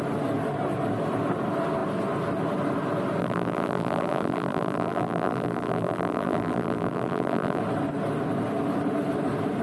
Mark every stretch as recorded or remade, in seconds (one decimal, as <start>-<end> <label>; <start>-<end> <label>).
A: 0.0-3.2 recorded; 3.2-7.6 remade; 7.6-9.6 recorded